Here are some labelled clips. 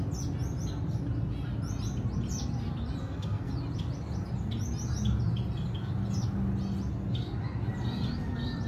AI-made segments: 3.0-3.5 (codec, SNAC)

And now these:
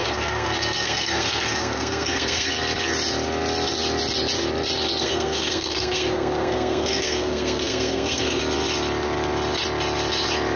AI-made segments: 0.0-2.5 (codec, SNAC); 5.0-8.4

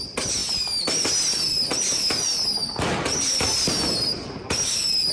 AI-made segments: none

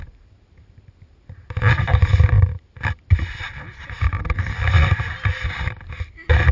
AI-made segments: none

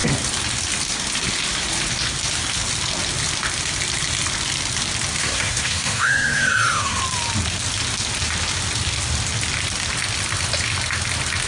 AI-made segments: 5.2-7.0 (codec, SNAC)